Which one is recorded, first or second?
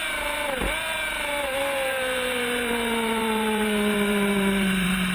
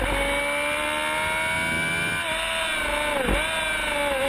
second